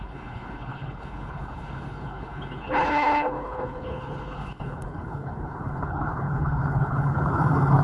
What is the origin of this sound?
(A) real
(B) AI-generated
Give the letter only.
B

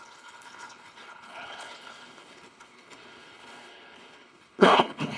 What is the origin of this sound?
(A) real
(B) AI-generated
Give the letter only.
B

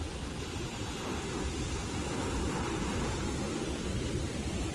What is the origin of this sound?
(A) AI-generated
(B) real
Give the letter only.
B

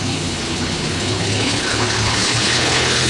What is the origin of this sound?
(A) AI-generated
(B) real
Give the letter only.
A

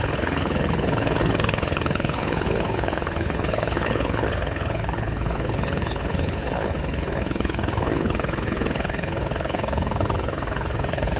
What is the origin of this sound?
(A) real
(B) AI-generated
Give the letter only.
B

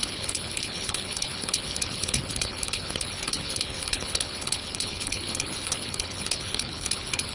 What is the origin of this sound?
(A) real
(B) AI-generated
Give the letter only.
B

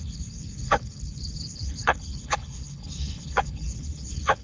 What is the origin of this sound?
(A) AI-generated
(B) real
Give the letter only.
A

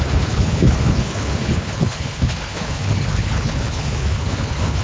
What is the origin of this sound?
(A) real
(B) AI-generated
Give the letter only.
B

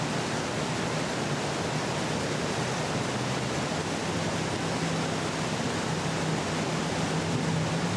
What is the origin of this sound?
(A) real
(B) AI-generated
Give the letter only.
A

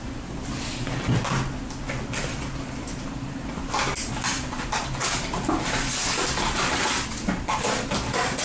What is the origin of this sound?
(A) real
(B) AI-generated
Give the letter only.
A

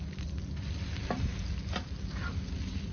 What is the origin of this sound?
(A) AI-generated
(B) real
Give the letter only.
B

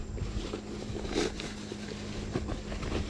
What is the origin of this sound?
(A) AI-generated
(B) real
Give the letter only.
B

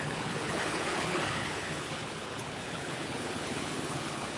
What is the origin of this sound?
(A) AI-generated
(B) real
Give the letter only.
A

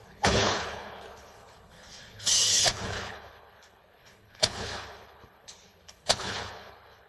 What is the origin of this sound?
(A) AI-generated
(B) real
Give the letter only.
A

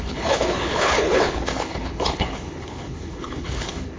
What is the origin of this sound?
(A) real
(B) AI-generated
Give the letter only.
B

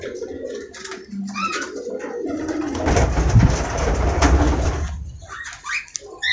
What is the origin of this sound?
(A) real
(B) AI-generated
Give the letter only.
A